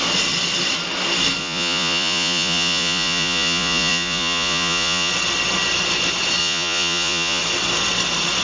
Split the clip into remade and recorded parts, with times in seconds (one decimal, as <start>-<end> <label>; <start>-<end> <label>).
0.0-1.4 recorded; 1.4-5.1 remade; 5.1-6.4 recorded; 6.4-7.4 remade; 7.4-8.4 recorded